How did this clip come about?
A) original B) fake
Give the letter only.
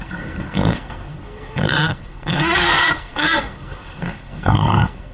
B